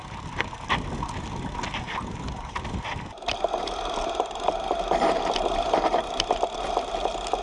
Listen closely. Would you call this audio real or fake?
real